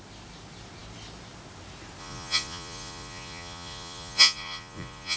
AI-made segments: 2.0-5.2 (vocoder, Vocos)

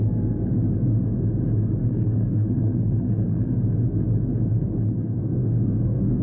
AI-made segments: 1.8-3.5 (codec, SNAC); 5.4-6.2

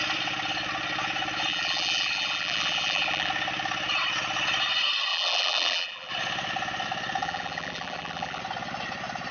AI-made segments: 1.5-3.3 (vocoder, BigVGAN v2); 5.1-6.1; 7.2-8.4

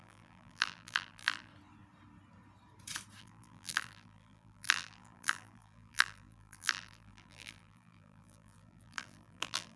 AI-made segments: 0.0-1.5 (vocoder, BigVGAN v2); 3.2-9.8